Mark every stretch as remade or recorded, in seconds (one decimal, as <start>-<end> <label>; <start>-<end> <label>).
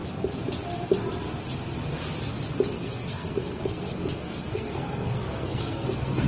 0.0-2.7 recorded; 2.7-6.3 remade